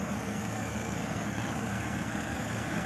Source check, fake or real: fake